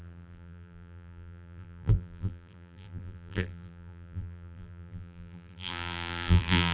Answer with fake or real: fake